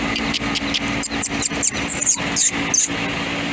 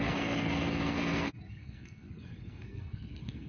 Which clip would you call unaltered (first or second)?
first